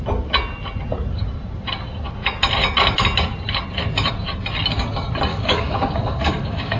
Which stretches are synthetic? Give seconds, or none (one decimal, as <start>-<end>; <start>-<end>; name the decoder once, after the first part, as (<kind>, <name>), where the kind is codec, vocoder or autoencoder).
5.3-6.8 (codec, DAC)